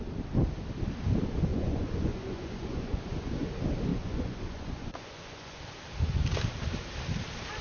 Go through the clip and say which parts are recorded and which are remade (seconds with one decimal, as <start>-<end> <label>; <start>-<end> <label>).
0.0-1.5 recorded; 1.5-3.5 remade; 3.5-3.9 recorded; 3.9-5.6 remade; 5.6-7.6 recorded